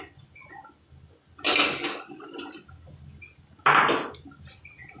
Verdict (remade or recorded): recorded